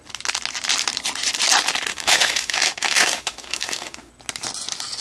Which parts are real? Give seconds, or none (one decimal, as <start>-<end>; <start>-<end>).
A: 0.0-1.9; 4.1-5.0